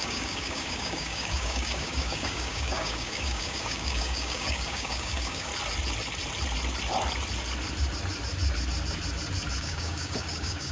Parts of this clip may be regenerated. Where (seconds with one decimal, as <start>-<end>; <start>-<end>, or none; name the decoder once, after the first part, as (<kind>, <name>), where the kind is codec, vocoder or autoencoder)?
0.0-5.5 (codec, DAC); 9.6-10.7